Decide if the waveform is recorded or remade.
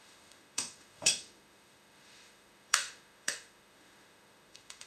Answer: remade